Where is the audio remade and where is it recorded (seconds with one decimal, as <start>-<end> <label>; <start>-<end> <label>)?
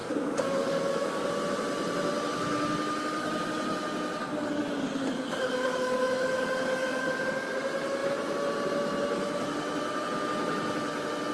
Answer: 0.0-1.3 remade; 1.3-4.2 recorded; 4.2-7.1 remade; 7.1-11.3 recorded